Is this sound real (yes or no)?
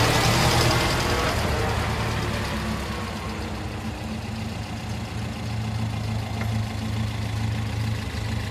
yes